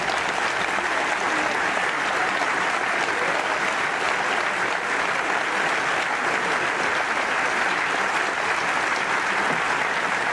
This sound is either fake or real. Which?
real